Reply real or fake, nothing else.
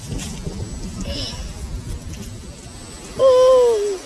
real